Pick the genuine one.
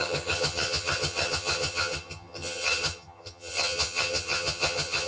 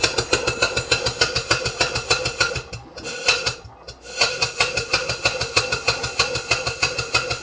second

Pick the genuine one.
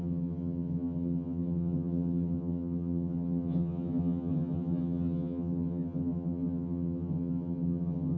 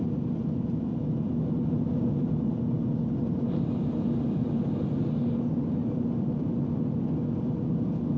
second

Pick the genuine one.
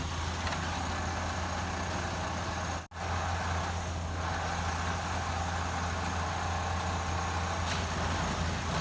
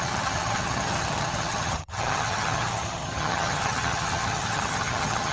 first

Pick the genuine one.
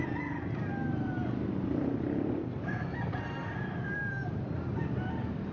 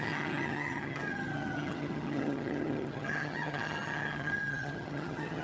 first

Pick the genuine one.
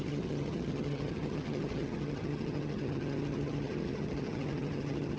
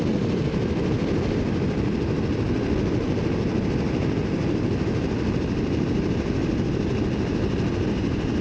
second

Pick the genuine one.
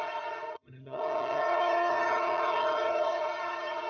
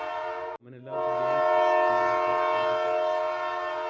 second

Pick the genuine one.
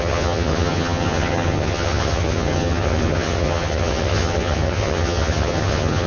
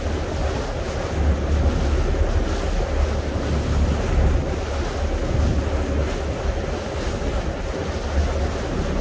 second